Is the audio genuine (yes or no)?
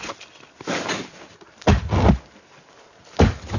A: yes